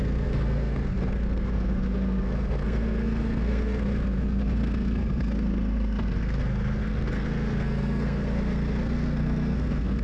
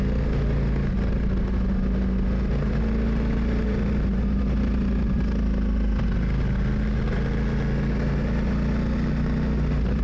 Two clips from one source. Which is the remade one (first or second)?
first